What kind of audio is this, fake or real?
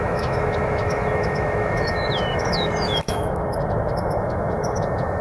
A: fake